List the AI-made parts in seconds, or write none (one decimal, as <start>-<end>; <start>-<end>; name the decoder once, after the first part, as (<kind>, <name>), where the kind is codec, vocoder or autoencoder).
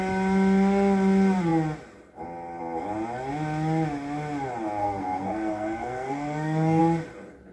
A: 4.8-6.8 (codec, SNAC)